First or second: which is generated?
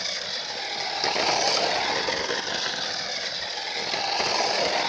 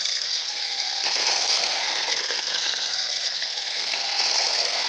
second